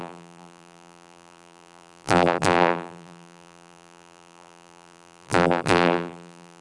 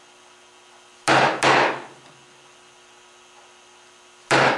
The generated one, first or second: first